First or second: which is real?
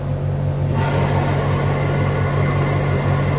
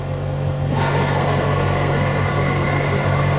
first